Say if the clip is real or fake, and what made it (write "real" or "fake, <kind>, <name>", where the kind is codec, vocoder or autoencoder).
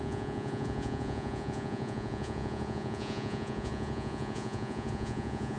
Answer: fake, vocoder, Vocos